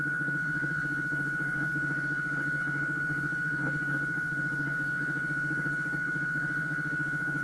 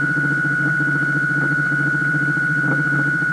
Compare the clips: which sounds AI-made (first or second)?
first